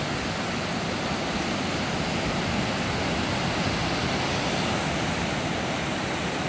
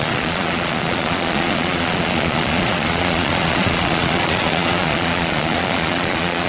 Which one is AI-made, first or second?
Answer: second